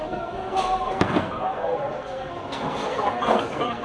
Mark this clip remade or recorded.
remade